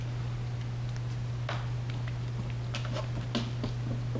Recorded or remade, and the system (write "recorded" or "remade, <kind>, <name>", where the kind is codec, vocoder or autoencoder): recorded